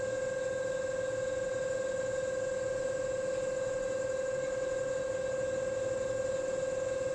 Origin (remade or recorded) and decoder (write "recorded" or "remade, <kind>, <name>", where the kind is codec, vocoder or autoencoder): recorded